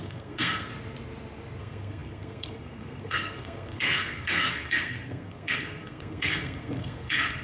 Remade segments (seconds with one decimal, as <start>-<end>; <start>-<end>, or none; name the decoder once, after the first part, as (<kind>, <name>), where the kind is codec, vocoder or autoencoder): 0.0-0.7 (codec, SNAC); 1.6-7.4